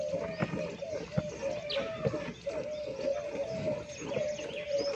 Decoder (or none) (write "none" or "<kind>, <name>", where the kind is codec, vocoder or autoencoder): none